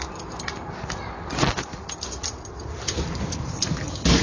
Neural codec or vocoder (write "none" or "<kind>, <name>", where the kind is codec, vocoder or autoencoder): none